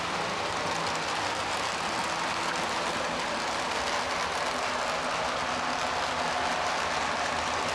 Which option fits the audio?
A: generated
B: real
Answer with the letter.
B